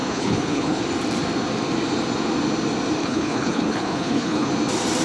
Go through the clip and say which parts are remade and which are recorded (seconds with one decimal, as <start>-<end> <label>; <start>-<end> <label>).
0.0-0.8 remade; 0.8-3.0 recorded; 3.0-4.5 remade; 4.5-5.0 recorded